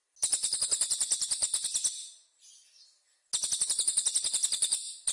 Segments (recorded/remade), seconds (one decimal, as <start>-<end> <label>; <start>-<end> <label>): 0.0-5.1 recorded